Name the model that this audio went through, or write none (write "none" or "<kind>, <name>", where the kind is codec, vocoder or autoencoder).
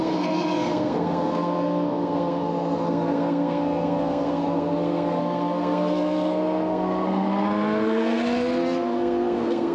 codec, SNAC